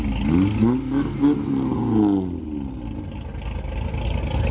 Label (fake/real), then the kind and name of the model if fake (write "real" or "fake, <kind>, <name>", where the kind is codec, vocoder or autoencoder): real